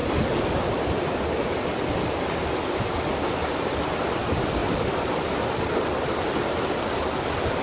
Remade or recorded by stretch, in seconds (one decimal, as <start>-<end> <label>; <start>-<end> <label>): 0.0-7.6 recorded